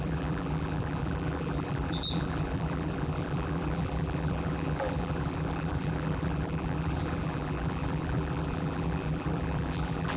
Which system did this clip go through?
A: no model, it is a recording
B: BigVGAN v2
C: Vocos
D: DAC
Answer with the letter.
B